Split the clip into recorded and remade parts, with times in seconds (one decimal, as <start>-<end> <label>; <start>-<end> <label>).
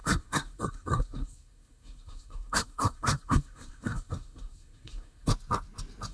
0.0-5.3 remade; 5.3-6.1 recorded